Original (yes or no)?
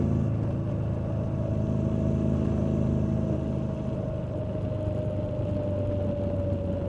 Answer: yes